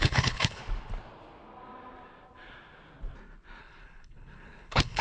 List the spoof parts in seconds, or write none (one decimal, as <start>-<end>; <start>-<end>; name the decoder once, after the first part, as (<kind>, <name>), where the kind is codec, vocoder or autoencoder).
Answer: 0.0-0.6 (codec, HILCodec); 3.6-5.0